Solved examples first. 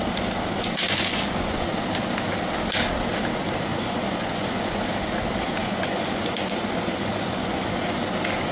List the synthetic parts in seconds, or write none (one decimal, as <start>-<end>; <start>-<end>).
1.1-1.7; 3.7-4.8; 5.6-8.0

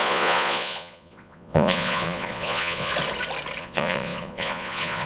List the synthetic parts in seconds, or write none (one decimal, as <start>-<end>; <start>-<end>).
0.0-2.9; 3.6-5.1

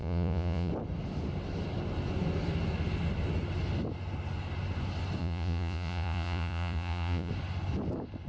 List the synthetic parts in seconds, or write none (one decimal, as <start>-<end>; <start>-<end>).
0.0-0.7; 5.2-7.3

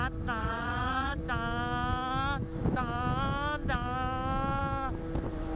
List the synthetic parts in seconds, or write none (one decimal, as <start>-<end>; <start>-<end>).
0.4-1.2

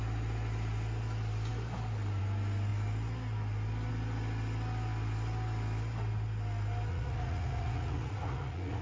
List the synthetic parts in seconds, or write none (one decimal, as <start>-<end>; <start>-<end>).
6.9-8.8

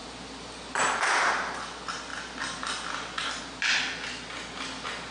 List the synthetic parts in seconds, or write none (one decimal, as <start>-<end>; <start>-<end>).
none